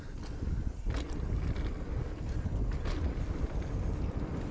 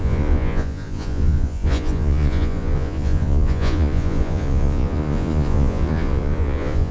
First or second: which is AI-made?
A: second